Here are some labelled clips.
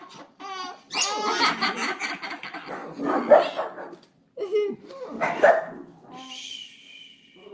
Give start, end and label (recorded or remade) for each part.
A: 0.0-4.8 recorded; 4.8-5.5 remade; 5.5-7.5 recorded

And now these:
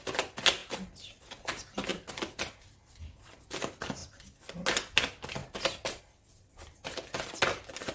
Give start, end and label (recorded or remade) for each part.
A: 0.0-7.9 recorded

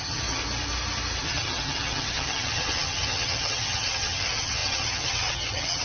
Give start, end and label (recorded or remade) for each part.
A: 0.0-0.4 remade; 0.4-1.2 recorded; 1.2-5.8 remade

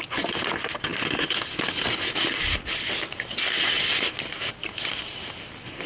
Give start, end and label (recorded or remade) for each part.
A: 0.0-5.9 recorded

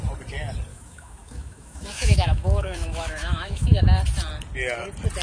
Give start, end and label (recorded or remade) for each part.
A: 0.0-0.7 recorded; 0.7-3.8 remade; 3.8-5.2 recorded

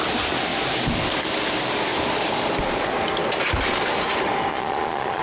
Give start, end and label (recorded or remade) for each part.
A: 0.0-4.5 recorded; 4.5-5.2 remade

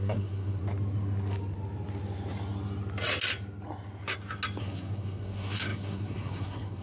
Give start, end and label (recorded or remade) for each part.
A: 0.0-0.6 remade; 0.6-4.6 recorded; 4.6-6.8 remade

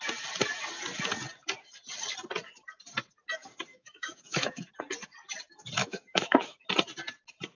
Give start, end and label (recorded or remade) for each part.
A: 0.0-3.7 recorded; 3.7-4.7 remade; 4.7-5.8 recorded; 5.8-6.7 remade; 6.7-7.5 recorded